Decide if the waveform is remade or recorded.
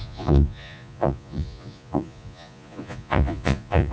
remade